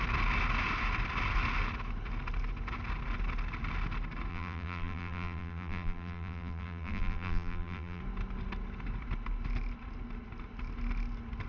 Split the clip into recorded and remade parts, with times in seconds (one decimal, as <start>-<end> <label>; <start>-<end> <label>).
0.0-4.3 recorded; 4.3-8.0 remade; 8.0-11.5 recorded